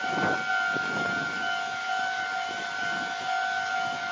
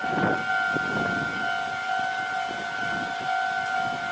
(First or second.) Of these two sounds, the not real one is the first